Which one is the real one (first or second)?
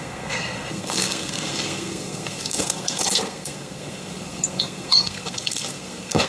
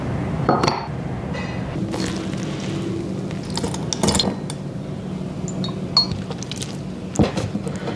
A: second